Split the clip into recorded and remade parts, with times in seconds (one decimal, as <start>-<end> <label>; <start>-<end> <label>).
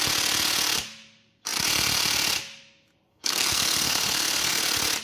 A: 0.0-3.1 recorded; 3.1-4.6 remade; 4.6-5.0 recorded